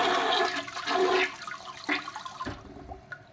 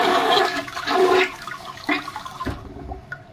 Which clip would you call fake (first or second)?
second